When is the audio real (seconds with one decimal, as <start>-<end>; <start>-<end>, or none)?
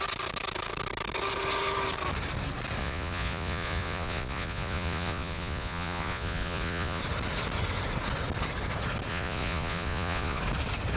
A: 0.0-2.8; 7.0-9.1; 10.4-11.0